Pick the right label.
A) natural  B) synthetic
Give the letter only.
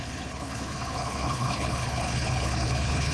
B